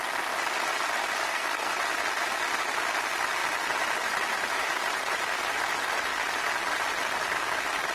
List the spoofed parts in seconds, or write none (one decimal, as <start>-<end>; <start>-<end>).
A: 1.2-1.7